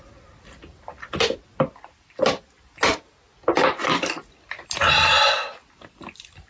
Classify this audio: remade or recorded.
recorded